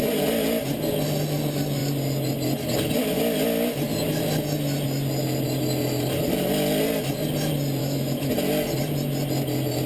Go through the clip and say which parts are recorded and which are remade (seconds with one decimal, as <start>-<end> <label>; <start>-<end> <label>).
0.0-7.8 recorded; 7.8-8.3 remade; 8.3-9.9 recorded